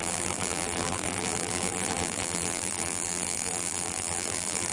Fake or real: fake